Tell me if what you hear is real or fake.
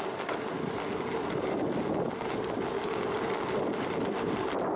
real